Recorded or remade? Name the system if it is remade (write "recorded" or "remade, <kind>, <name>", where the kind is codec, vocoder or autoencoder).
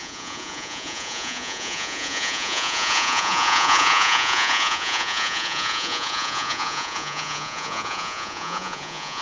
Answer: remade, vocoder, Vocos